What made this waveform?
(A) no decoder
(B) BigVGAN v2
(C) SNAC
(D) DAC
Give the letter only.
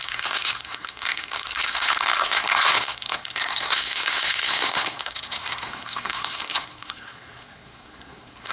C